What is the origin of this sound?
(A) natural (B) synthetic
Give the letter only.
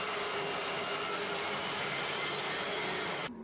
A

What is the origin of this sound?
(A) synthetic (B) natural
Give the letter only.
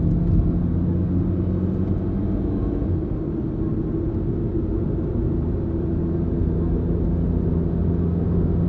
B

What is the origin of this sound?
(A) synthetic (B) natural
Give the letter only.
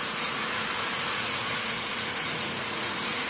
A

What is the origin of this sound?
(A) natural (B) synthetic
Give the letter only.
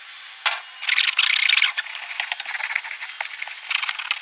A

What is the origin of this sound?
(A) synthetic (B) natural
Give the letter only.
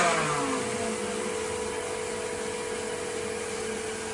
B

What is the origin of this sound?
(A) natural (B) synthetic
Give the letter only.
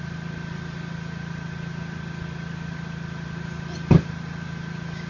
A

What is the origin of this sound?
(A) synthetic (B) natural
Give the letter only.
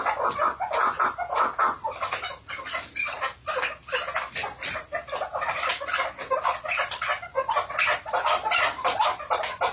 B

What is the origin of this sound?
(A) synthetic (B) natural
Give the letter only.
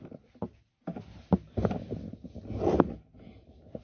B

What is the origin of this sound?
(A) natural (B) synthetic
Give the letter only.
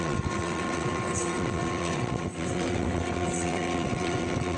B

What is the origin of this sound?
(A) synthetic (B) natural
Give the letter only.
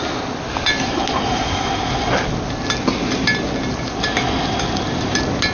B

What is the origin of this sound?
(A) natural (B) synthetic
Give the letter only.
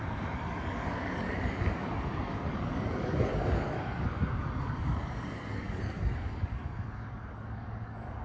B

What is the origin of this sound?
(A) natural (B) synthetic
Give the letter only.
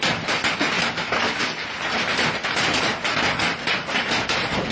A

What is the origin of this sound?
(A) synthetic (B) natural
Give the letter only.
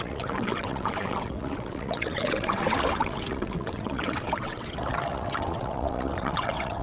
A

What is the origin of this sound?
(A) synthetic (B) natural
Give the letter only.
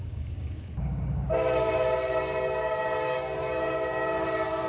A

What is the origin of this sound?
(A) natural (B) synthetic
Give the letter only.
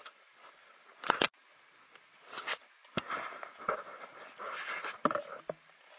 A